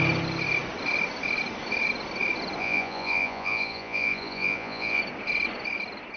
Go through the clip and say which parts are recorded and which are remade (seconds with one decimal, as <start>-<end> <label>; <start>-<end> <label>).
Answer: 0.0-2.6 recorded; 2.6-5.0 remade; 5.0-6.2 recorded